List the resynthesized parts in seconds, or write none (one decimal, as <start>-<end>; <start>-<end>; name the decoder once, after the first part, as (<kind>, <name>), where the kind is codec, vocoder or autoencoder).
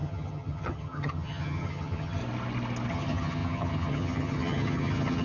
0.0-2.2 (vocoder, HiFi-GAN); 2.9-5.2